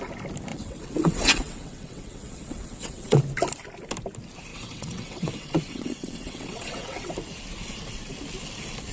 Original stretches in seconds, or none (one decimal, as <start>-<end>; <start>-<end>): 0.0-0.5; 3.2-4.5; 7.1-8.9